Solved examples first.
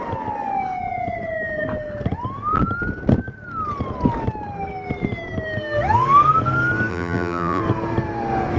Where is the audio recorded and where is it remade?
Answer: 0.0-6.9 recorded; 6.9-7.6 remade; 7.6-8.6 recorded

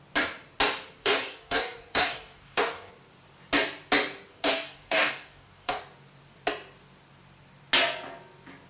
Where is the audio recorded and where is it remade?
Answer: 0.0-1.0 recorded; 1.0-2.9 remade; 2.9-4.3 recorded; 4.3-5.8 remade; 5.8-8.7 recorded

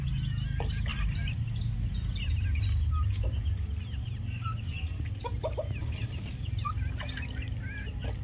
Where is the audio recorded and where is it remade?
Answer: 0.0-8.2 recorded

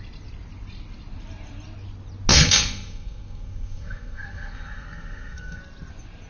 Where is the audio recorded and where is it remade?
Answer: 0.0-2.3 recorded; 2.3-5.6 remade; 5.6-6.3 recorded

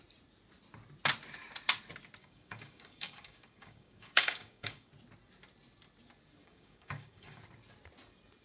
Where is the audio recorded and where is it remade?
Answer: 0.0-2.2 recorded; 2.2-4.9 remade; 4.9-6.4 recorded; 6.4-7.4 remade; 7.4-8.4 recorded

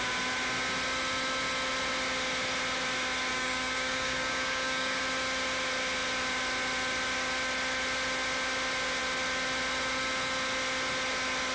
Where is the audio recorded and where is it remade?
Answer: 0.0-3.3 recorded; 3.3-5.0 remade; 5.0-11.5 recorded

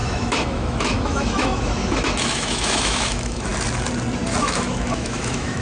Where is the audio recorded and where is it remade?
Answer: 0.0-3.5 remade; 3.5-4.4 recorded; 4.4-5.6 remade